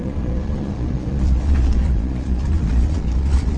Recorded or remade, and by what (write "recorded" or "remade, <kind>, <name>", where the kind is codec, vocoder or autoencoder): remade, vocoder, Vocos